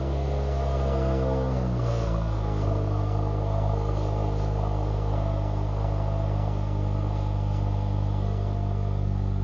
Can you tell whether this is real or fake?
fake